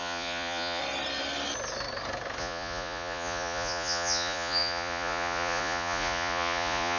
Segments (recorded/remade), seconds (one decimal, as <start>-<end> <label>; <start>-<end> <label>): 0.0-0.8 remade; 0.8-2.4 recorded; 2.4-7.0 remade